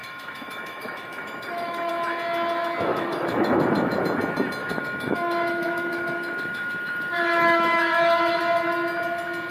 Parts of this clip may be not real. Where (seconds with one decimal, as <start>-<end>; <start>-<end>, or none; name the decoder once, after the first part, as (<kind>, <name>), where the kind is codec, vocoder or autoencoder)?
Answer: 0.0-1.9 (autoencoder, DAC-VAE); 2.9-4.0; 4.6-8.4

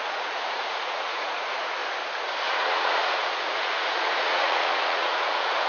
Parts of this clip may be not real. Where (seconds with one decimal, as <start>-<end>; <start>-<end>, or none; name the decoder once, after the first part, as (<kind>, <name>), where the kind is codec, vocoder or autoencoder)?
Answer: 0.0-1.8 (vocoder, Vocos); 2.5-5.7

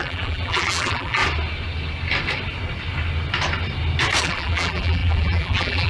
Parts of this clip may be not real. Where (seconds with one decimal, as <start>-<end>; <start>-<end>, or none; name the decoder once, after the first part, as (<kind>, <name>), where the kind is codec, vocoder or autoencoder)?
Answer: 0.0-1.2 (vocoder, BigVGAN v2); 4.2-5.9

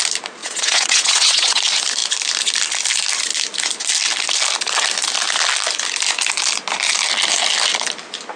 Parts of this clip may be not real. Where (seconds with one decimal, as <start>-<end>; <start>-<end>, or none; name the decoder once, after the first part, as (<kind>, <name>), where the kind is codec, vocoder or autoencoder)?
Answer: 0.4-1.6 (vocoder, WaveNeXt)

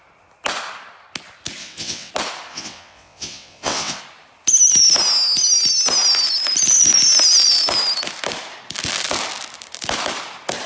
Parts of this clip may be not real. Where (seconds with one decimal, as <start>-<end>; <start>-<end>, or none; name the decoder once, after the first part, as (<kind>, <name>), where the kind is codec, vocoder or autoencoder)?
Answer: 1.6-2.1 (vocoder, WaveNeXt); 2.5-4.0

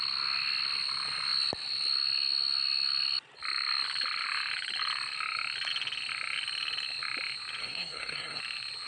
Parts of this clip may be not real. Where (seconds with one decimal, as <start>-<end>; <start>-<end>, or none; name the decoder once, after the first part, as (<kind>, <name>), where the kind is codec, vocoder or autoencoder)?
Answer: 7.6-8.4 (codec, SNAC)